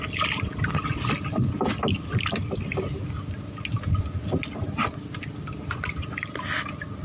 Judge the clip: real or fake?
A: real